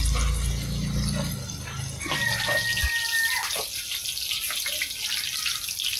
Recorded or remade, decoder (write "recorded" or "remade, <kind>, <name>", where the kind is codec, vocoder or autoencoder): recorded